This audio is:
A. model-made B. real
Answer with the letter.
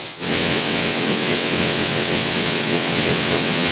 A